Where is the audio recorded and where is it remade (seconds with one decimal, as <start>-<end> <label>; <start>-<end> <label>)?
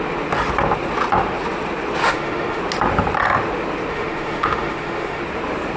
0.0-2.0 recorded; 2.0-2.6 remade; 2.6-3.9 recorded; 3.9-5.2 remade; 5.2-5.8 recorded